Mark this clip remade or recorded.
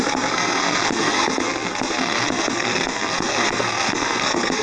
remade